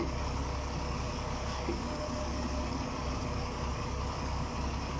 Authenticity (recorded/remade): remade